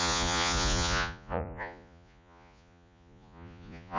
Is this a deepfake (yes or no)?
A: yes